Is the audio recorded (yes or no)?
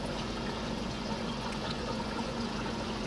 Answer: no